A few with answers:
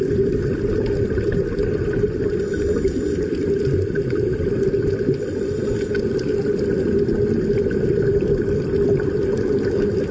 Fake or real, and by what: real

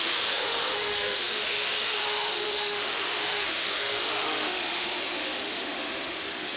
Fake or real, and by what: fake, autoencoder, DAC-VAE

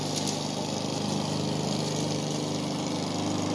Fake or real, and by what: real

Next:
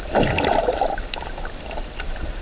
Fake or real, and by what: fake, vocoder, BigVGAN v2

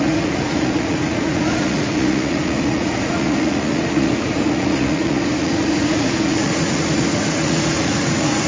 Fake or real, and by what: fake, vocoder, Vocos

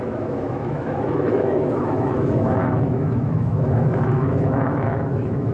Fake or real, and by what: fake, autoencoder, DAC-VAE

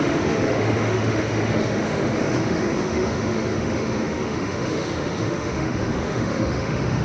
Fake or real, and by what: fake, autoencoder, DAC-VAE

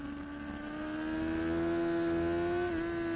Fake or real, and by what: real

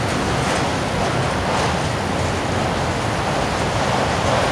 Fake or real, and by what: real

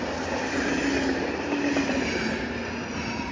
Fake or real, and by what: real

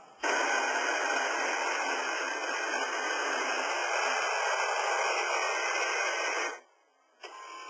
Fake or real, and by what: real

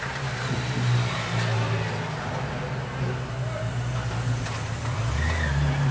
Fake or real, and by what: real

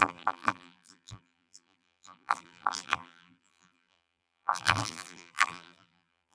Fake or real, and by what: fake, vocoder, BigVGAN v2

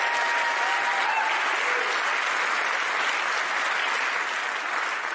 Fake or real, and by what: real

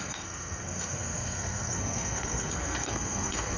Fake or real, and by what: fake, codec, SNAC